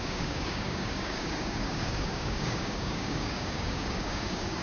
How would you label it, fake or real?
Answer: fake